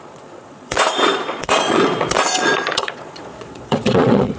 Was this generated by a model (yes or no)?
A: yes